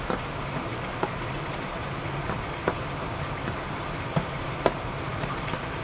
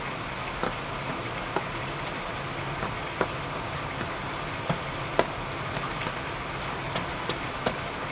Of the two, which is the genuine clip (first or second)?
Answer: second